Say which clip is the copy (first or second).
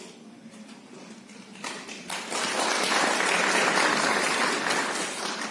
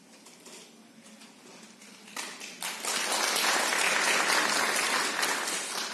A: first